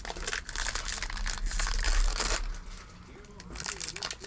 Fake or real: real